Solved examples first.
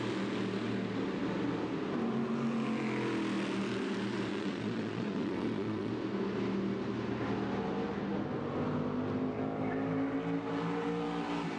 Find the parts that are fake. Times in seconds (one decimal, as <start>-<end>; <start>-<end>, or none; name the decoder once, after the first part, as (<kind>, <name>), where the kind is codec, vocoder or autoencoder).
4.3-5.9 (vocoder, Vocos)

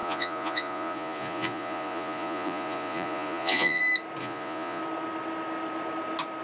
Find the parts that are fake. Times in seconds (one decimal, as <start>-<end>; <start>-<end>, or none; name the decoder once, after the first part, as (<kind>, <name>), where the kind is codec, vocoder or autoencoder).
0.0-3.8 (vocoder, Vocos); 4.2-4.8

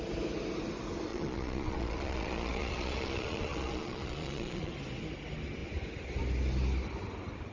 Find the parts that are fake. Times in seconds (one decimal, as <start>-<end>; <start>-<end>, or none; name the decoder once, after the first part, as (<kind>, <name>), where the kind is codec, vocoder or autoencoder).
1.1-4.7 (vocoder, Vocos)